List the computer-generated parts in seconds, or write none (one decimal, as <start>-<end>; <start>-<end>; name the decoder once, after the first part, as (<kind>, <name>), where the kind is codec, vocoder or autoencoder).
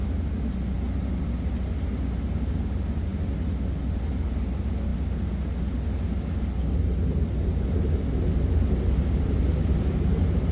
none